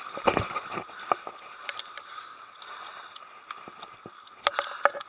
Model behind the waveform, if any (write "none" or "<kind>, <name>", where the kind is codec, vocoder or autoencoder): none